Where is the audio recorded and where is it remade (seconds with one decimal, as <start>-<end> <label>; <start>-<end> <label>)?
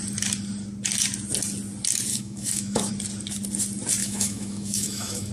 0.0-2.1 recorded; 2.1-2.9 remade; 2.9-4.0 recorded; 4.0-5.3 remade